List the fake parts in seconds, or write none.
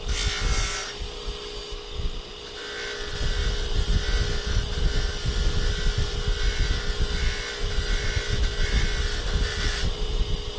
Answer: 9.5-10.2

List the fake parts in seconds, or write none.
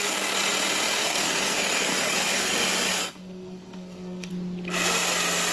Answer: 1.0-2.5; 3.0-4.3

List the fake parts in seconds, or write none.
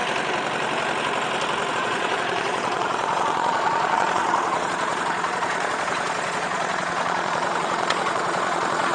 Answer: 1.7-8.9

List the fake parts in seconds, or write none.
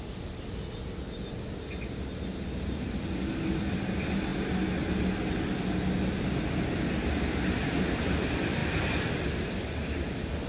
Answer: none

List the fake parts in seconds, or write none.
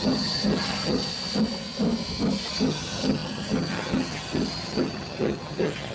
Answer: 0.0-1.1; 2.5-5.9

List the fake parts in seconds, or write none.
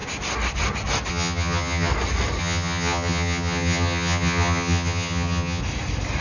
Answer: 1.1-1.9; 2.4-5.6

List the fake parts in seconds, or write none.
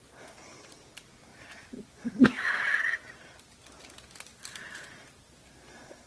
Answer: none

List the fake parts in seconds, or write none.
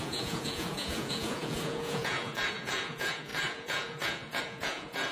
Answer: 0.0-5.1